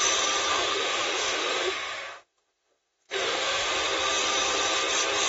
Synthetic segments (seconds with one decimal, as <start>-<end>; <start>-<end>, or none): 0.5-3.7